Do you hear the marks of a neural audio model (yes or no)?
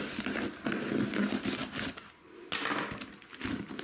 no